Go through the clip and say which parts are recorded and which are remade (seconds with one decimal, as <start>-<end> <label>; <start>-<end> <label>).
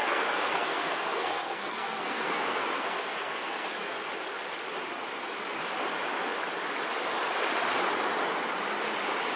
0.0-4.0 remade; 4.0-9.4 recorded